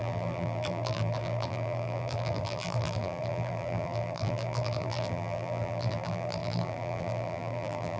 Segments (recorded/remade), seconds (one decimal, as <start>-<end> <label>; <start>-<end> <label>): 0.0-8.0 remade